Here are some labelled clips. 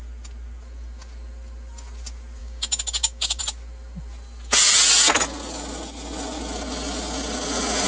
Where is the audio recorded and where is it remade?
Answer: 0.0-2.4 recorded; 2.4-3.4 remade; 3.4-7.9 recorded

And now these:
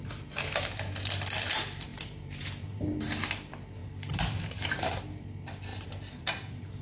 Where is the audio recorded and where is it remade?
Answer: 0.0-1.9 recorded; 1.9-2.8 remade; 2.8-3.8 recorded; 3.8-5.0 remade; 5.0-5.7 recorded; 5.7-6.8 remade